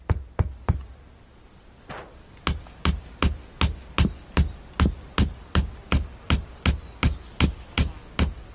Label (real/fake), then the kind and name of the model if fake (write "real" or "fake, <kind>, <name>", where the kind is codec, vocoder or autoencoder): real